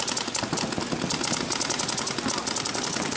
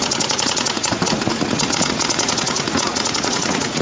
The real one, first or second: first